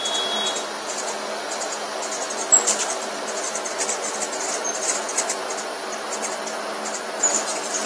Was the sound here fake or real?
real